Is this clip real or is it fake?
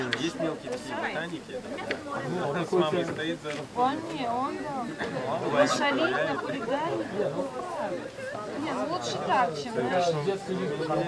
real